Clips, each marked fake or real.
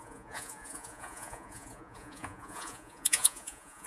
fake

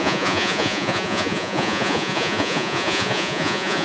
fake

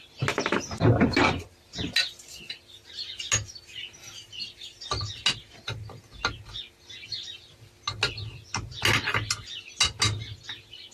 real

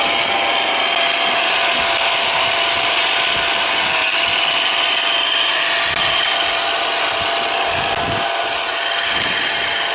real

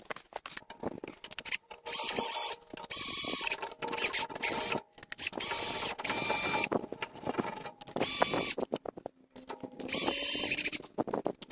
real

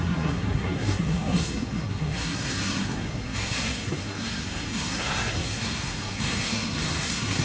fake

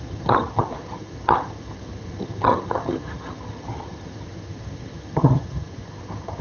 fake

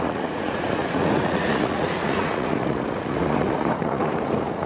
fake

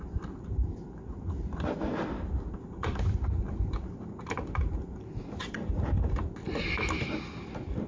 real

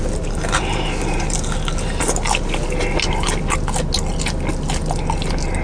real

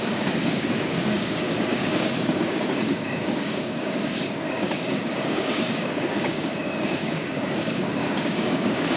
fake